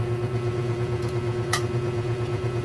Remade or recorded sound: remade